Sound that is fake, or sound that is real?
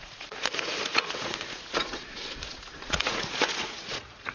fake